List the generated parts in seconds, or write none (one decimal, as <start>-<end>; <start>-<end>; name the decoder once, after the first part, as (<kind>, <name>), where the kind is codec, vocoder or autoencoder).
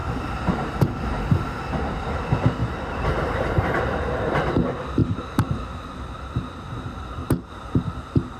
0.0-0.9 (vocoder, BigVGAN v2); 2.6-4.5; 5.0-5.6